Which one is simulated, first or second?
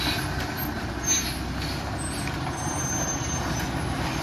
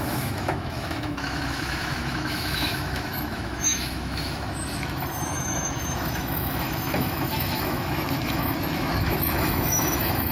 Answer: second